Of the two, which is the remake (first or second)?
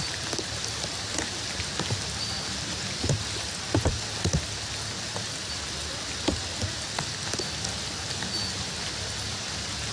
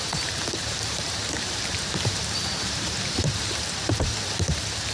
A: second